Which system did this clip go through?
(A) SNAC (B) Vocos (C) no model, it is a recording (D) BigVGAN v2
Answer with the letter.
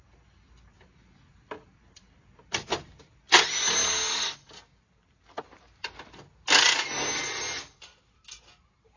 C